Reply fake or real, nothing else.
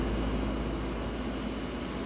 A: real